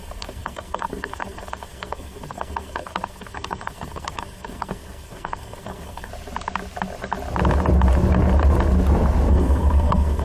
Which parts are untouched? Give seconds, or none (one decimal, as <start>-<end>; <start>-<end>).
6.1-9.3